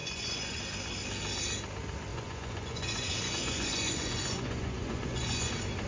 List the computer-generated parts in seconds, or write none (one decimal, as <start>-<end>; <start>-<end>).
0.0-0.6; 2.1-5.5